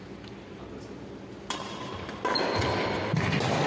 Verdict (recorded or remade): recorded